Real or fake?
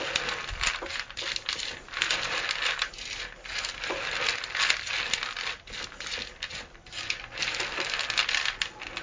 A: real